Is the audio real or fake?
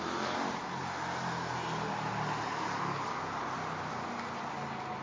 real